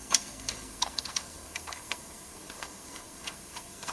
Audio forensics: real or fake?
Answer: fake